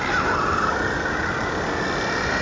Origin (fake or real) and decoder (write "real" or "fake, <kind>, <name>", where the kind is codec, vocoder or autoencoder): real